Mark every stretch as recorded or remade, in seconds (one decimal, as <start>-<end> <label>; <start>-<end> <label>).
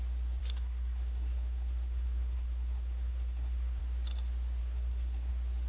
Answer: 0.0-0.4 recorded; 0.4-3.8 remade; 3.8-4.6 recorded; 4.6-5.3 remade; 5.3-5.7 recorded